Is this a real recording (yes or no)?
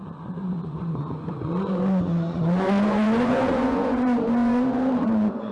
no